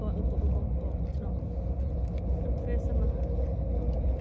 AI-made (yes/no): no